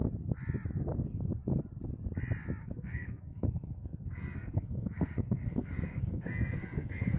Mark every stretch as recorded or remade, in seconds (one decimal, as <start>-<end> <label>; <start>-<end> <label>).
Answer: 0.0-2.6 recorded; 2.6-7.2 remade